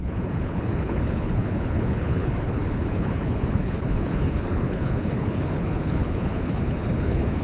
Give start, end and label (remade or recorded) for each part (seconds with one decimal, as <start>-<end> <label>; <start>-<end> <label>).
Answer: 0.0-7.4 remade